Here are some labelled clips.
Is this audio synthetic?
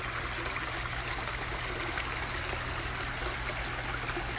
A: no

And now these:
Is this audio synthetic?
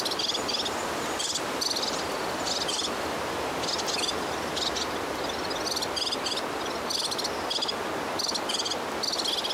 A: no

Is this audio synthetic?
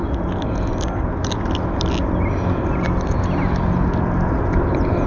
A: no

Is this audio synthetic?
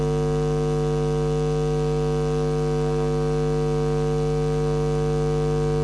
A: no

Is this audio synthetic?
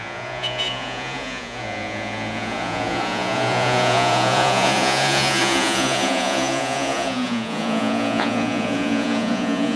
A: yes